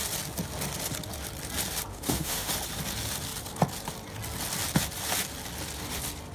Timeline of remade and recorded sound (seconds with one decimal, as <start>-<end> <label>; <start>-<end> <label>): 0.0-1.9 recorded; 1.9-2.5 remade; 2.5-6.3 recorded